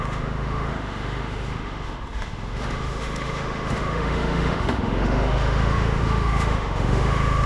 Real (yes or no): no